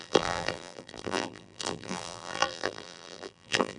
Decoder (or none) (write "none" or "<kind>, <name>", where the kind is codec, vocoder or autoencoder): vocoder, BigVGAN v2